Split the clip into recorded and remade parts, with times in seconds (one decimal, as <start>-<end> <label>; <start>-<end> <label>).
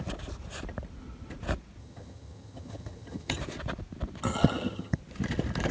0.0-1.8 recorded; 1.8-3.4 remade; 3.4-4.3 recorded; 4.3-5.0 remade; 5.0-5.7 recorded